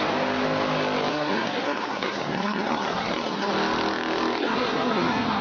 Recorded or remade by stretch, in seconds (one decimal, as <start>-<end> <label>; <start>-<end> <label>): 0.0-1.1 recorded; 1.1-3.5 remade; 3.5-4.4 recorded; 4.4-5.4 remade